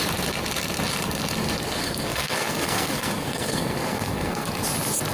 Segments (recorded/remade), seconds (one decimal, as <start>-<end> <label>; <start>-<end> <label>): 0.0-1.8 recorded; 1.8-4.5 remade; 4.5-5.1 recorded